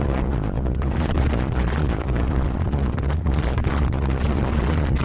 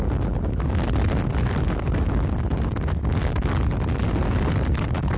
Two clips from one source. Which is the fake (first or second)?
first